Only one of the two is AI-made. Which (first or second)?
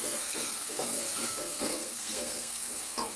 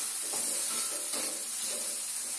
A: first